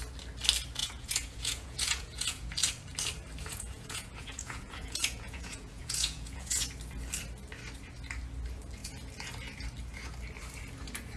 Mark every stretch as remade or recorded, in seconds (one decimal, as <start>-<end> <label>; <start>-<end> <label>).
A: 0.0-0.8 recorded; 0.8-2.5 remade; 2.5-3.5 recorded; 3.5-6.7 remade; 6.7-11.2 recorded